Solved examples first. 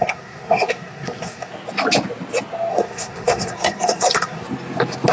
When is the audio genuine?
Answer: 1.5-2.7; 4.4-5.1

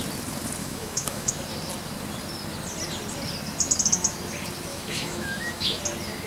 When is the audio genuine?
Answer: 0.0-0.6; 1.3-4.7; 5.8-6.3

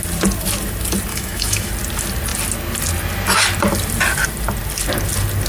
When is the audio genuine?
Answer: 0.0-1.1; 1.7-5.5

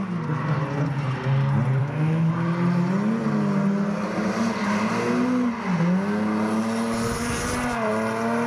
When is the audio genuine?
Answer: 0.0-1.8; 2.3-8.5

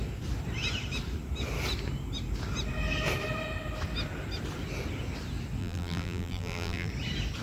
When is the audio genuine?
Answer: 0.0-5.6; 6.9-7.4

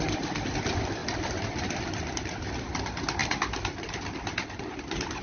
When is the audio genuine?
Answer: 0.0-5.2

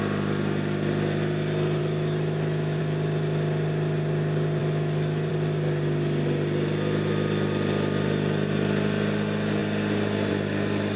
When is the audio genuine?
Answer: 0.0-1.8; 2.8-4.6; 5.3-11.0